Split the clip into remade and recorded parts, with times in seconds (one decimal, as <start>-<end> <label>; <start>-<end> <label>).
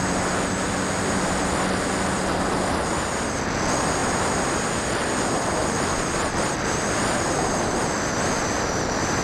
0.0-9.2 recorded